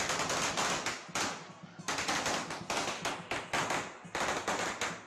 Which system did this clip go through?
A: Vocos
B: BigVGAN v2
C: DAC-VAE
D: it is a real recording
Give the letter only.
D